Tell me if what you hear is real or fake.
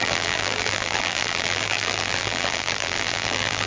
fake